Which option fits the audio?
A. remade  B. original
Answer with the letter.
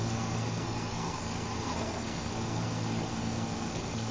A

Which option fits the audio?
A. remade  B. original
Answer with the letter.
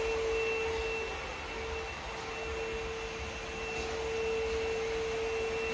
B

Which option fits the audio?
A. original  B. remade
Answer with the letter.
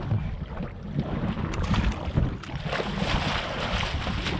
A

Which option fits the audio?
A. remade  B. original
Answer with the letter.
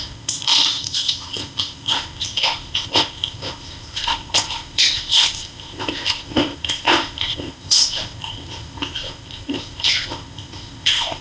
A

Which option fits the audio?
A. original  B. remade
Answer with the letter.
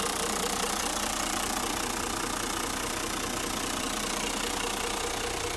A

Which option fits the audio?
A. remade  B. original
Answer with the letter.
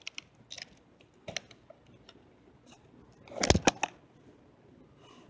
B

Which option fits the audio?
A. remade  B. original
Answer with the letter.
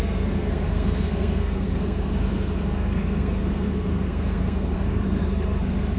A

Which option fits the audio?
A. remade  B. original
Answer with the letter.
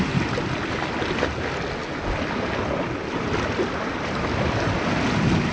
B